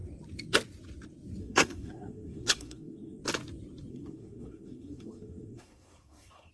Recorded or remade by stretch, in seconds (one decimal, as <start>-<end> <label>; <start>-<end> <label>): 0.0-1.4 recorded; 1.4-3.2 remade; 3.2-3.9 recorded; 3.9-6.5 remade